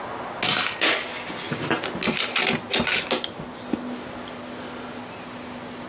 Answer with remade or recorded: recorded